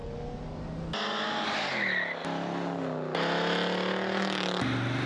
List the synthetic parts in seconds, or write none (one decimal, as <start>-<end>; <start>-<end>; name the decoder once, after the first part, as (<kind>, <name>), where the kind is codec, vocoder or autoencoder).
none